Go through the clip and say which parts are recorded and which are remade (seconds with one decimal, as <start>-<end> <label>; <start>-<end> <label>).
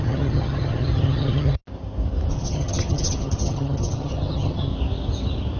0.0-1.6 remade; 1.6-2.3 recorded; 2.3-4.7 remade; 4.7-5.6 recorded